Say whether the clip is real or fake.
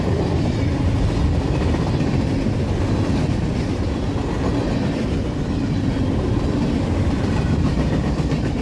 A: real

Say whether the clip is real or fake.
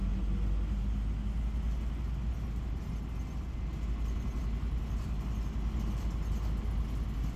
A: real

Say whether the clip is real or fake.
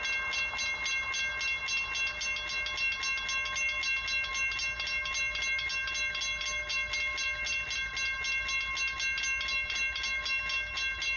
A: real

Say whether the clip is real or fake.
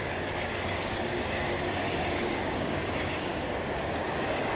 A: fake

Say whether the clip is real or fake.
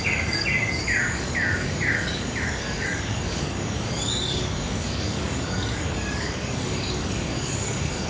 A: fake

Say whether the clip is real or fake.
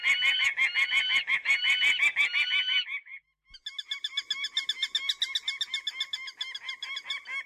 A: real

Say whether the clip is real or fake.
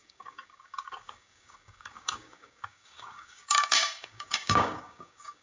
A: fake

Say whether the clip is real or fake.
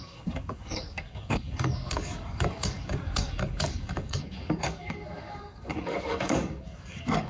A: fake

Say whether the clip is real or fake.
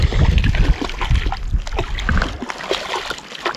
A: real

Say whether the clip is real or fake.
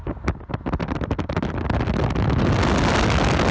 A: real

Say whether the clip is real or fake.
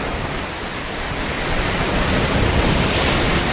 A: real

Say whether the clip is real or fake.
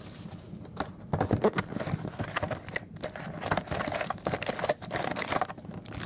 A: real